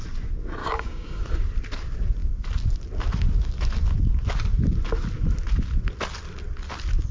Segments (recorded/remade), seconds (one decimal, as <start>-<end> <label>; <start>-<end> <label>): 0.0-0.6 recorded; 0.6-1.2 remade; 1.2-7.1 recorded